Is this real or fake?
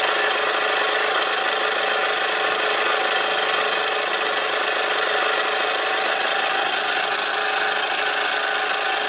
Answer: real